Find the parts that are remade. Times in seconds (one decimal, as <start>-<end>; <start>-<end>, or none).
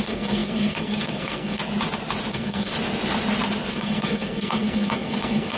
0.0-1.6; 2.3-2.7; 3.7-5.6